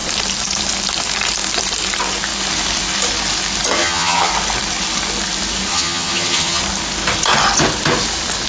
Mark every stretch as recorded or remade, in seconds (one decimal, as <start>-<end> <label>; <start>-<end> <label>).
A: 0.0-3.8 recorded; 3.8-4.3 remade; 4.3-5.7 recorded; 5.7-6.6 remade; 6.6-8.5 recorded

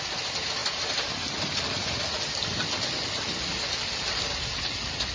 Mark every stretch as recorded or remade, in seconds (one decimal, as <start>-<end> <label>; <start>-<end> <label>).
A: 0.0-5.1 recorded

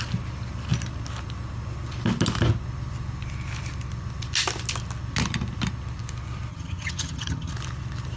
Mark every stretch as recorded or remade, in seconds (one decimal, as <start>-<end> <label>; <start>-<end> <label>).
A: 0.0-6.5 recorded; 6.5-7.5 remade; 7.5-8.2 recorded

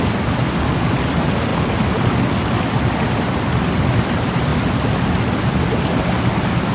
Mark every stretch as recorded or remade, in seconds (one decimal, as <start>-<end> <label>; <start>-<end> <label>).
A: 0.0-6.7 recorded

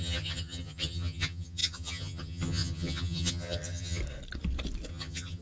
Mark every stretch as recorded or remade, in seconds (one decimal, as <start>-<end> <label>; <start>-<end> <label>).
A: 0.0-4.0 remade; 4.0-4.9 recorded; 4.9-5.4 remade

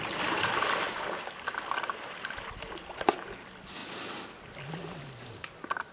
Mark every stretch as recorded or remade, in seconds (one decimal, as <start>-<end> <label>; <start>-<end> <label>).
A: 0.0-5.9 recorded

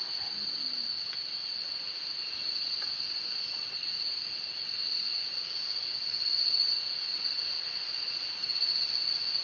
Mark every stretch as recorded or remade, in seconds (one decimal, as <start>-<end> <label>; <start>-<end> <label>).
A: 0.0-9.4 recorded